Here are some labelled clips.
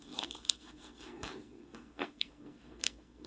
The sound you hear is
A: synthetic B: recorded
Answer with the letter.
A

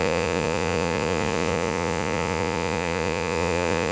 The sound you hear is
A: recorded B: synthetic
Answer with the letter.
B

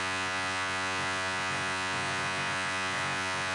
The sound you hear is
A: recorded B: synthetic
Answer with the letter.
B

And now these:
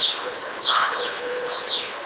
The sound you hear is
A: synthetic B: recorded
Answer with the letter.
A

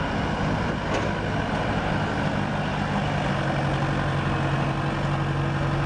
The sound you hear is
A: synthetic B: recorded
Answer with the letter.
B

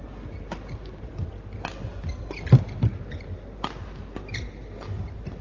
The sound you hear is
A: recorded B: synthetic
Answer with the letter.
A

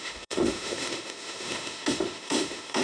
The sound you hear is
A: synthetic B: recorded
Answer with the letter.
A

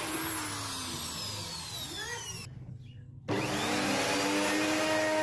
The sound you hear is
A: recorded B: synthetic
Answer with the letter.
A